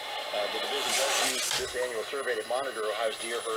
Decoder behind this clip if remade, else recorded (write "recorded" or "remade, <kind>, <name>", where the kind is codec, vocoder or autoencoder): recorded